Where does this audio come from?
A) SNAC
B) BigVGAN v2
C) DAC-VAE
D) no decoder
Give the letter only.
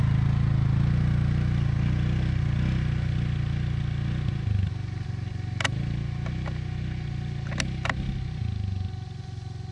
D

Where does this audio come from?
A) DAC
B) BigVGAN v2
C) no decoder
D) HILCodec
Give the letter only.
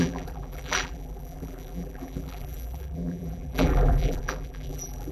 B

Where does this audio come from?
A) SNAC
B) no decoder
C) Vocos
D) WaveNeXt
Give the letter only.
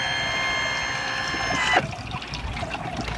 B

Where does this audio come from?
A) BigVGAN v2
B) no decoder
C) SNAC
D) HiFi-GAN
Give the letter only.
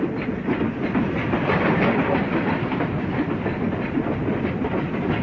A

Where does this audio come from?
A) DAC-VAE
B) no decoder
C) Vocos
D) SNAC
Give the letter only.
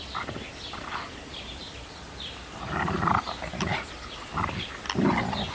B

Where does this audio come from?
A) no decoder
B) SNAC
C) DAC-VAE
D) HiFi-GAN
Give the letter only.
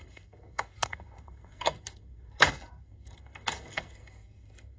B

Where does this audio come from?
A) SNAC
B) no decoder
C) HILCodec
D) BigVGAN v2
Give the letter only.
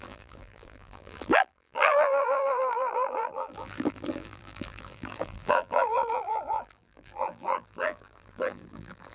D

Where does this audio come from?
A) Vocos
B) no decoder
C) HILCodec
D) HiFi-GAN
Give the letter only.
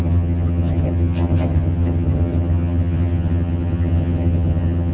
D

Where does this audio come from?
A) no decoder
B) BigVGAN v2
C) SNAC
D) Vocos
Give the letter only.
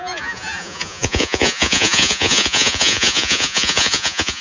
D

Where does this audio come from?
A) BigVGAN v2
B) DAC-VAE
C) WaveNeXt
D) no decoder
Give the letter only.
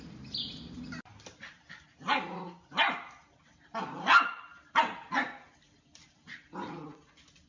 D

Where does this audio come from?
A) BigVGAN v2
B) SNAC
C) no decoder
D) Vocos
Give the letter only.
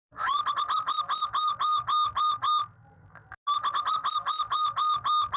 C